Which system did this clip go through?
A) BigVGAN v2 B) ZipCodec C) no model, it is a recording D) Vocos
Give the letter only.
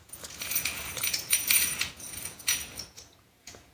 D